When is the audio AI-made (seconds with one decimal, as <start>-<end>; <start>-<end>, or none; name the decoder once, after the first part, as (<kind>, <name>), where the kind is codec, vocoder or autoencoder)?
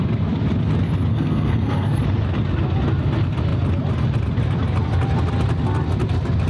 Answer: 1.1-2.0 (codec, SNAC)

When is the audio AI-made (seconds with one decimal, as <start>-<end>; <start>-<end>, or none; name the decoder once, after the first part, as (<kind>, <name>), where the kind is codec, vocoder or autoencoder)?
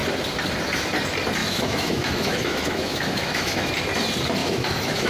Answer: 1.4-3.7 (autoencoder, DAC-VAE); 4.4-5.1